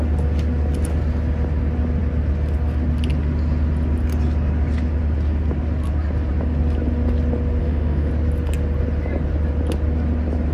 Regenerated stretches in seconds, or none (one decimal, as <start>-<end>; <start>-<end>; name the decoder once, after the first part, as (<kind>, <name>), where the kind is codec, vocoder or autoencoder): 7.6-8.1 (autoencoder, DAC-VAE)